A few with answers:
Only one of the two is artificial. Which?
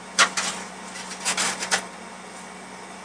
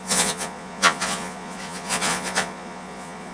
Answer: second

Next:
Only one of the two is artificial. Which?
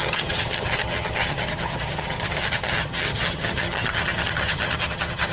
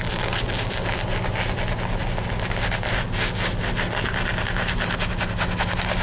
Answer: first